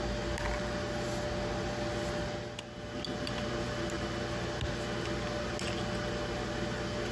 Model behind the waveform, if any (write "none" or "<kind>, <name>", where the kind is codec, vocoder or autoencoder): none